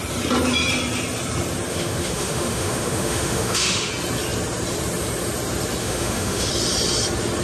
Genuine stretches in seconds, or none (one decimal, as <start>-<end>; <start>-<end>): 0.0-1.7; 3.9-5.8; 6.5-7.4